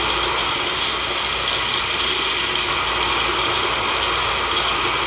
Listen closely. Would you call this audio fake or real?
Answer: real